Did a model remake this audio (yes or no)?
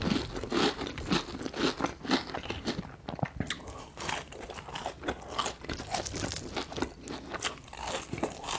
no